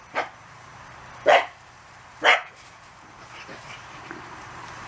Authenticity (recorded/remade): remade